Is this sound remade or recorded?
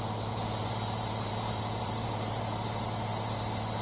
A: remade